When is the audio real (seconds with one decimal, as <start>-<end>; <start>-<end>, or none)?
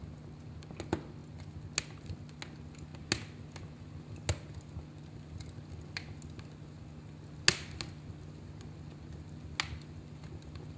0.0-10.8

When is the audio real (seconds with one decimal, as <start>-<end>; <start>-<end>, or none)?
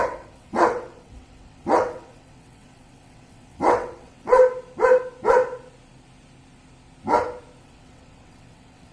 4.4-7.6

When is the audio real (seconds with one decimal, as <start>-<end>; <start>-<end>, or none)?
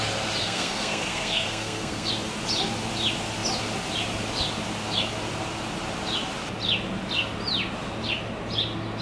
0.0-0.4; 2.1-9.0